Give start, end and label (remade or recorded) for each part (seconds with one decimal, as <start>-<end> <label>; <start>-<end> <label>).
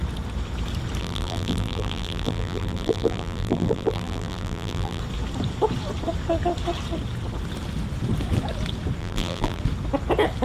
0.0-1.0 recorded; 1.0-5.0 remade; 5.0-9.0 recorded; 9.0-9.6 remade; 9.6-10.4 recorded